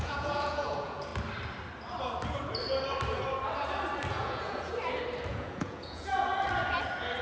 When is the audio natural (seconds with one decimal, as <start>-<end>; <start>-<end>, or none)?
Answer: 1.1-4.1; 4.7-5.3; 6.3-7.2

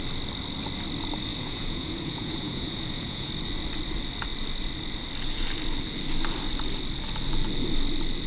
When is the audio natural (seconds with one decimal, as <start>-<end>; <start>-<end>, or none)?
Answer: 0.0-1.3; 3.3-8.3

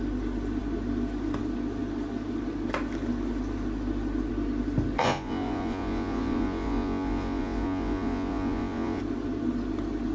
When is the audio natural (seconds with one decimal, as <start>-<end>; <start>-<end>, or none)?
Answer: 0.0-5.0; 9.0-10.1